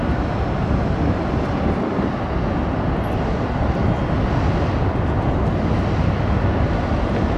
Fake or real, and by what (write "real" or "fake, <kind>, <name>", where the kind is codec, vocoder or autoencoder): real